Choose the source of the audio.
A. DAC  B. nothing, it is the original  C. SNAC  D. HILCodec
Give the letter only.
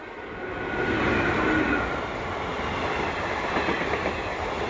B